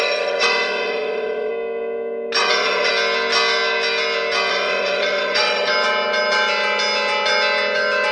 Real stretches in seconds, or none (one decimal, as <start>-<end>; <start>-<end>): 1.5-2.4; 2.9-4.5; 5.7-8.1